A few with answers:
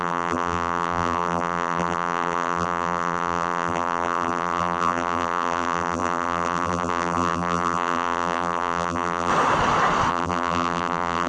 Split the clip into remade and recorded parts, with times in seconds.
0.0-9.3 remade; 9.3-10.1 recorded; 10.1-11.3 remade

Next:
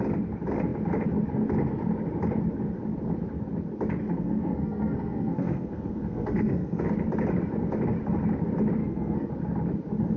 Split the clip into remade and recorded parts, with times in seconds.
0.0-4.0 recorded; 4.0-6.8 remade; 6.8-8.8 recorded; 8.8-9.3 remade; 9.3-10.2 recorded

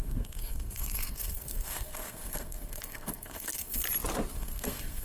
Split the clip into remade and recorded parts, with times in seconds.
0.0-3.8 remade; 3.8-4.3 recorded; 4.3-5.0 remade

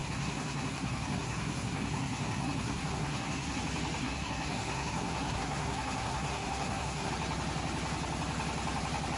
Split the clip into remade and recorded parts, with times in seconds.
0.0-3.6 remade; 3.6-4.0 recorded; 4.0-7.1 remade; 7.1-9.2 recorded

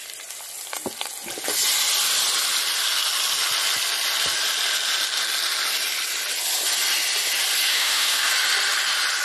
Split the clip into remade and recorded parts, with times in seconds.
0.0-7.7 recorded; 7.7-8.3 remade; 8.3-9.2 recorded

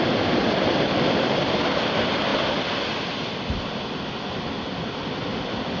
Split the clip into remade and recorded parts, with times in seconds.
0.0-5.8 recorded

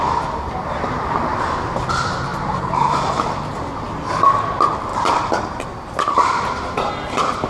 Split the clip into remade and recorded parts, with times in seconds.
0.0-2.3 recorded; 2.3-3.2 remade; 3.2-4.9 recorded; 4.9-6.9 remade; 6.9-7.5 recorded

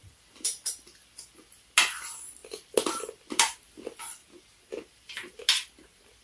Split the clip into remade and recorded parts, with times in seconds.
0.0-0.7 remade; 0.7-4.2 recorded; 4.2-5.4 remade; 5.4-6.2 recorded